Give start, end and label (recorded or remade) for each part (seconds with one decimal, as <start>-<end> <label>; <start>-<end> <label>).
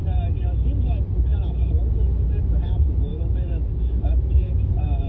0.0-3.1 recorded; 3.1-5.1 remade